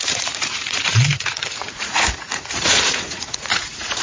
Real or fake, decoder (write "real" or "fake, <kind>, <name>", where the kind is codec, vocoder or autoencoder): fake, vocoder, Vocos